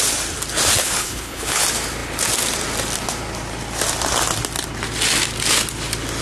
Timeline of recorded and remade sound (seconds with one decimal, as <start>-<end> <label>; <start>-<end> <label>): 0.0-0.8 recorded; 0.8-1.6 remade; 1.6-6.2 recorded